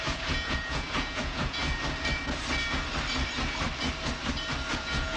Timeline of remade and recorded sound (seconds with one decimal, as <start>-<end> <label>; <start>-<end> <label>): 0.0-1.6 remade; 1.6-4.7 recorded; 4.7-5.2 remade